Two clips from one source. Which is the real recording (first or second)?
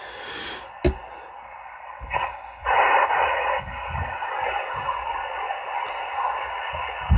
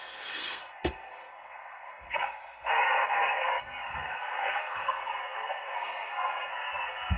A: first